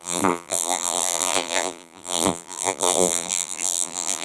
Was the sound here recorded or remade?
remade